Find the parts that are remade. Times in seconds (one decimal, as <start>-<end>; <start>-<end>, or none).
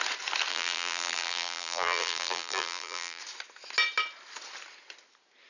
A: 0.5-3.2